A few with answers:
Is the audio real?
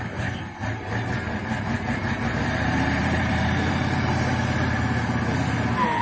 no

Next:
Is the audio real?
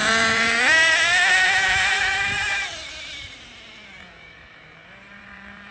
no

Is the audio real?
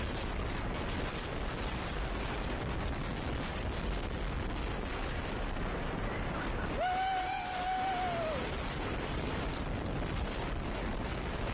yes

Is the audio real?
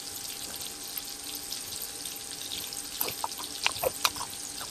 yes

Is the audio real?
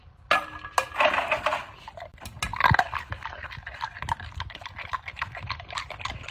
yes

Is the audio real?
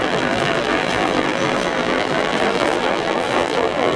no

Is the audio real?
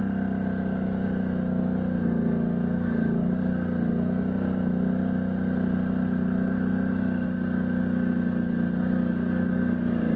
yes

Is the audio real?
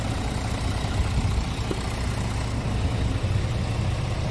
yes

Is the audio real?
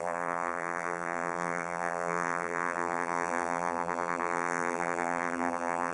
no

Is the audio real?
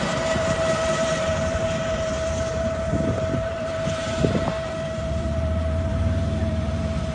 no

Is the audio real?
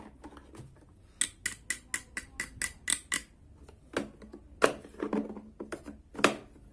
yes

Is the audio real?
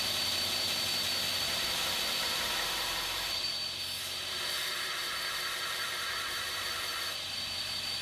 no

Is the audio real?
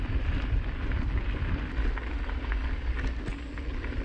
yes